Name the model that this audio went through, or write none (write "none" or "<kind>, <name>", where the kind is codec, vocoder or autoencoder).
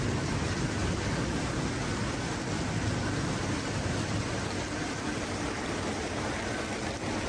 none